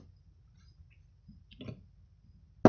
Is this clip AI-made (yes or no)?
no